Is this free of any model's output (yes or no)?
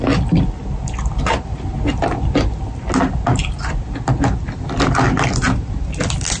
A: yes